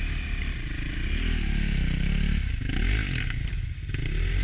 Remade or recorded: recorded